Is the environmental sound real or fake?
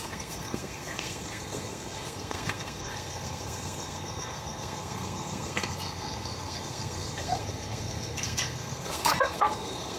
fake